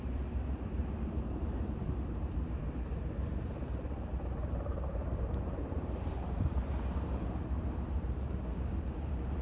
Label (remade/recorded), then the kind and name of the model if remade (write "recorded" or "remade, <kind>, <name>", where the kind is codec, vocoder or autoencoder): remade, vocoder, BigVGAN v2